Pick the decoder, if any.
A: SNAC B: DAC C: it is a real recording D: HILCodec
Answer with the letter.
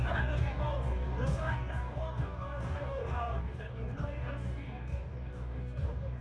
B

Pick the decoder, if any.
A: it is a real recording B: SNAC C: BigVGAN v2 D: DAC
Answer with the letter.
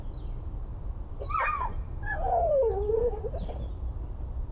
A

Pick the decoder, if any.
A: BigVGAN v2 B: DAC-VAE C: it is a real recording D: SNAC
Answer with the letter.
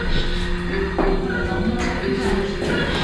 C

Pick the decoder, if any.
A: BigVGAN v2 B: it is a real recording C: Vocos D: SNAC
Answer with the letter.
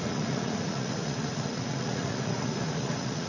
C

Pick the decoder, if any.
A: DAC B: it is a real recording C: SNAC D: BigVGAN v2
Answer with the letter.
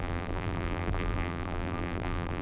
D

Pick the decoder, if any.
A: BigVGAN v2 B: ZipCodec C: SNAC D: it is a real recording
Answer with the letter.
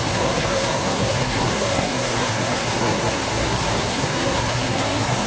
C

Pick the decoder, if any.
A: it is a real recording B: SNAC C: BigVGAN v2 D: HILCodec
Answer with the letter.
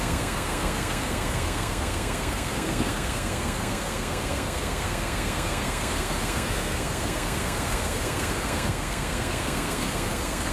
B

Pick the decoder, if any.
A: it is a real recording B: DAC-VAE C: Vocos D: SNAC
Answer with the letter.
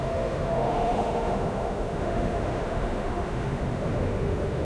B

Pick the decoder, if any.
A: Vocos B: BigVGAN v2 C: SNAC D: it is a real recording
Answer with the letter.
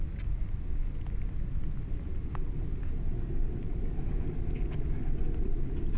D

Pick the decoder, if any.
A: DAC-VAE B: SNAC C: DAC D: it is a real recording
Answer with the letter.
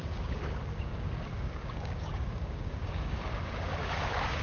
C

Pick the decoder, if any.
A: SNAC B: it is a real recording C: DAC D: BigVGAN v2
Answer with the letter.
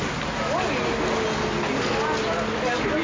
B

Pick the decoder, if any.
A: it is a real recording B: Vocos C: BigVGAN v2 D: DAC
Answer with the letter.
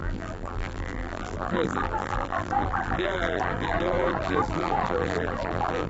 C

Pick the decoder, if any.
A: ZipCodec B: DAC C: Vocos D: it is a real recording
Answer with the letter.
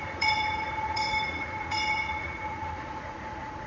C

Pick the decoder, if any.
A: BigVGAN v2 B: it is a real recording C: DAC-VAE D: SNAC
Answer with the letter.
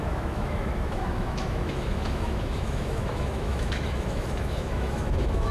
C